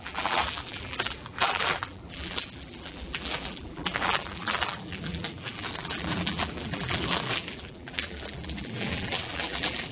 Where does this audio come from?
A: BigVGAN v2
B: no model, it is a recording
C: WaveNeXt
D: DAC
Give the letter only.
A